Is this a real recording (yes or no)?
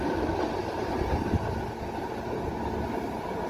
yes